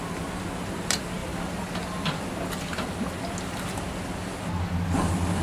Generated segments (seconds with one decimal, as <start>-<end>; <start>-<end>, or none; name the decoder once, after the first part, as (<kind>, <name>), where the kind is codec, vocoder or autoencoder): none